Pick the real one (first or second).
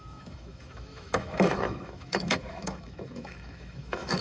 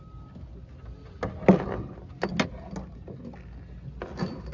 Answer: second